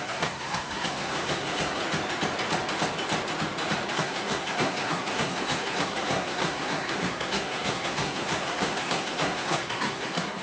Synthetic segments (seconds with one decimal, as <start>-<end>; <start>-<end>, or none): 0.0-1.8; 3.9-10.4